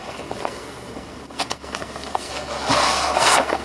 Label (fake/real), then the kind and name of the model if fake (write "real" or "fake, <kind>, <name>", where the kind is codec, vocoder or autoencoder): fake, codec, SNAC